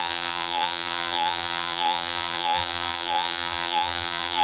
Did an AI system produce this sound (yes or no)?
yes